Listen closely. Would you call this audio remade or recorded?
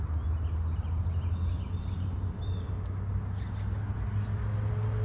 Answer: recorded